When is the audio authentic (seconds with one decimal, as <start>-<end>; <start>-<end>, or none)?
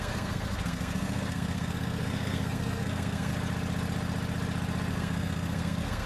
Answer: 3.3-4.9